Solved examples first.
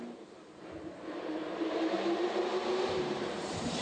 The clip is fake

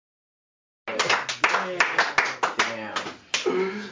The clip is real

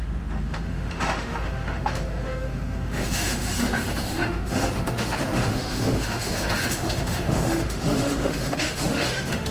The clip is fake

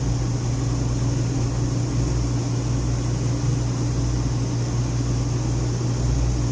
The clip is real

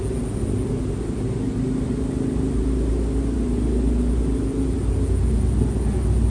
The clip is real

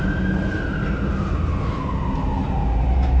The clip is real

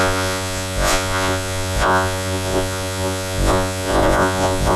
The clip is fake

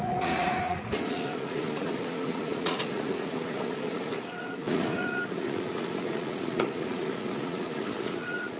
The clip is fake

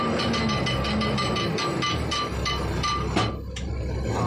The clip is real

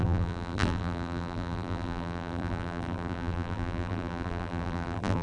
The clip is fake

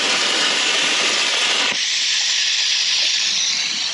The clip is fake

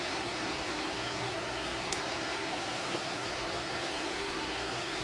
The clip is fake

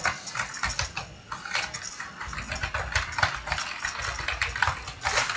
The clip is real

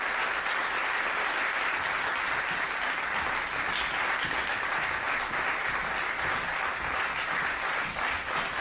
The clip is real